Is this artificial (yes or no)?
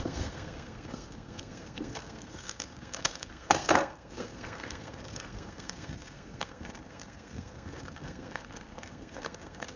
yes